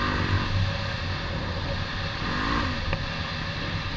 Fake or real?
real